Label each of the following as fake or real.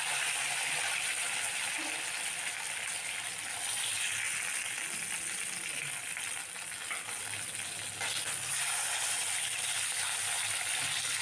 real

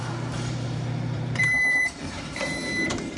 fake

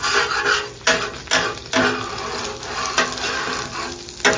real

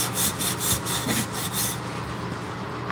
real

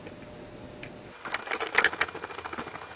real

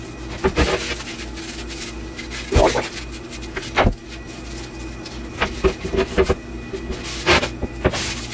real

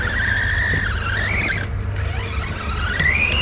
real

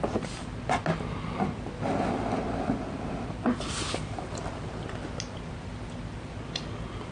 real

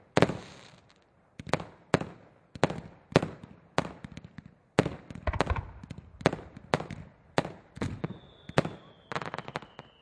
real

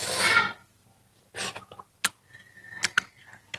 real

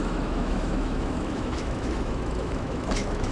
fake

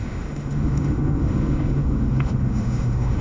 fake